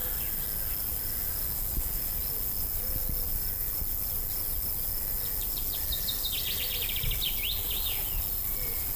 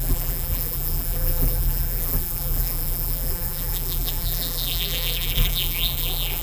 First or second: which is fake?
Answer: second